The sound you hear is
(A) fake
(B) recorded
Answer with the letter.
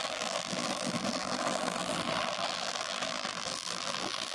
A